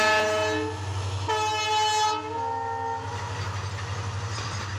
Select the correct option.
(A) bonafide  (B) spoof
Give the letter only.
A